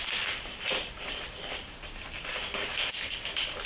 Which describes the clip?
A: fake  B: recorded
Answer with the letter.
B